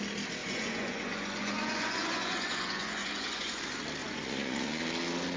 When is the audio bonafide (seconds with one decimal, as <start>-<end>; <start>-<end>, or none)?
0.0-0.4; 3.6-4.0; 4.8-5.4